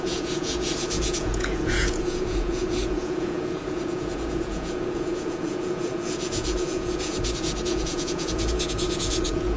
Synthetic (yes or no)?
yes